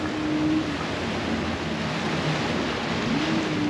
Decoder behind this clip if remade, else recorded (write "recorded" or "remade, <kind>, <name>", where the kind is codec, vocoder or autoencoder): recorded